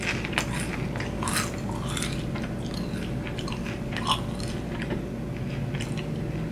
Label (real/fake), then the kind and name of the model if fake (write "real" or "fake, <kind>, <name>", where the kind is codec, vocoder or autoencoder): real